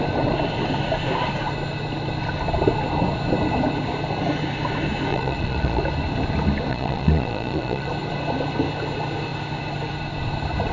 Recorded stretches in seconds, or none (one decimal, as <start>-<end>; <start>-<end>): 0.0-5.1; 5.8-6.7; 7.9-10.7